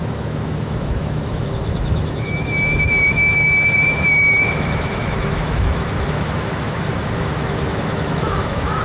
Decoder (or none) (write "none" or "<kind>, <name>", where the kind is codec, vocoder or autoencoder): autoencoder, DAC-VAE